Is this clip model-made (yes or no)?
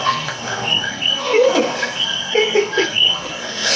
yes